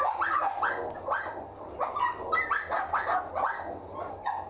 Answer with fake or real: real